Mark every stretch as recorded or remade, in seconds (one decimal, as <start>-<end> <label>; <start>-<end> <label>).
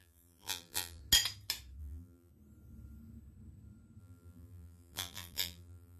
0.0-1.0 remade; 1.0-1.8 recorded; 1.8-2.3 remade; 2.3-4.0 recorded; 4.0-6.0 remade